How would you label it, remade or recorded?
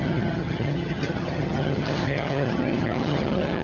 remade